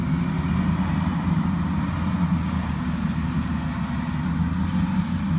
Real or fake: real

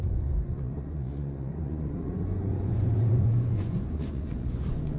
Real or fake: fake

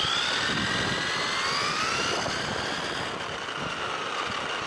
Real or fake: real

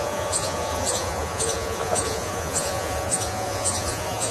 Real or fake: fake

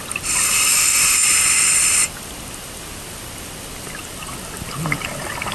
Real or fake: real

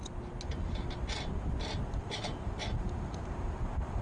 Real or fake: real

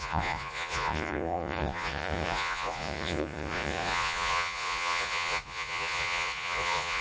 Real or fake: fake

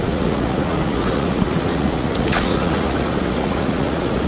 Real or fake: fake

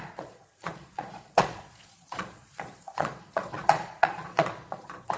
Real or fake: fake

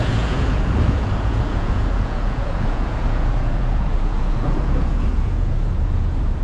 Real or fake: fake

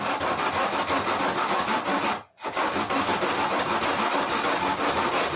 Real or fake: real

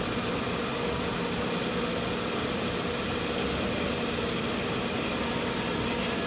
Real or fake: real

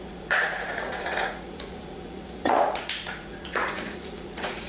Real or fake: fake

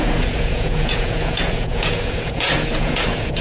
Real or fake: fake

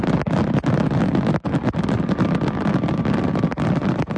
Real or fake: real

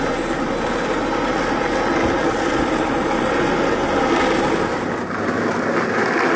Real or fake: real